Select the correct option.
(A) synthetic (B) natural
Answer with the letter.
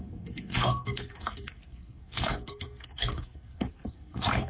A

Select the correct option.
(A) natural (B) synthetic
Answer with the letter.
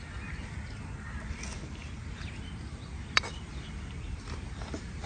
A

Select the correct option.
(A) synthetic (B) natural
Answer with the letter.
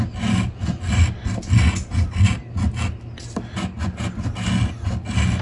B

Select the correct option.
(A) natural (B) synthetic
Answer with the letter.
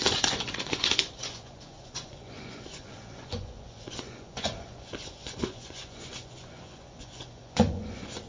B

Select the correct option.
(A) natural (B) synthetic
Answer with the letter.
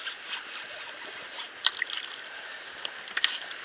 A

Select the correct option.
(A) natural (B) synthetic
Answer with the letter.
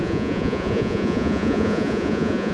B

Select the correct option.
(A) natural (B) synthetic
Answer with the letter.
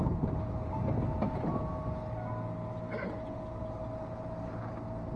A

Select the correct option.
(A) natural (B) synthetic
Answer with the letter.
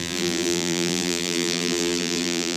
B